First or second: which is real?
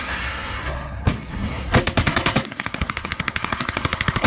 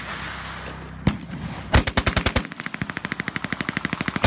second